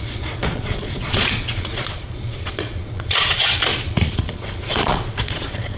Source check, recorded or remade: remade